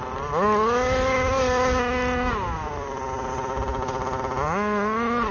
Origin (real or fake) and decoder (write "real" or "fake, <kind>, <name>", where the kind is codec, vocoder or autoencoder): real